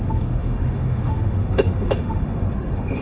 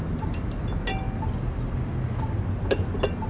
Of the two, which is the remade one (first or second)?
first